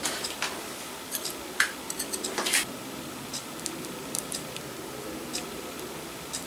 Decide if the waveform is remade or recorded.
remade